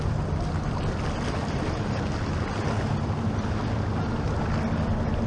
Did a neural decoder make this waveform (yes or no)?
no